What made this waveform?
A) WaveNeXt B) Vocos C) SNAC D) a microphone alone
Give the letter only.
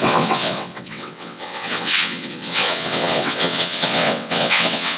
A